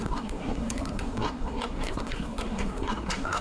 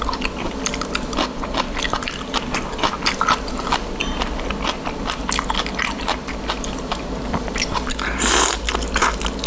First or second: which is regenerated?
first